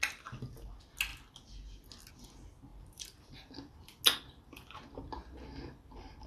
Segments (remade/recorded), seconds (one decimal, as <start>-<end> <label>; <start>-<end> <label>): 0.0-2.7 recorded; 2.7-4.0 remade; 4.0-6.3 recorded